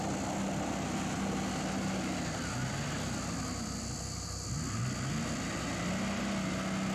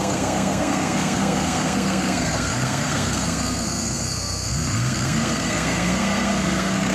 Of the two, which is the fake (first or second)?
second